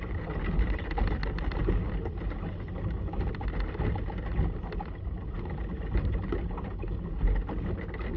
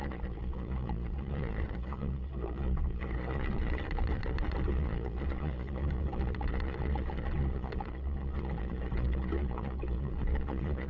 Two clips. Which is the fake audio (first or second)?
second